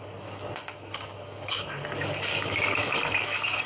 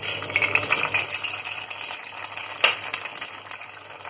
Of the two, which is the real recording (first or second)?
second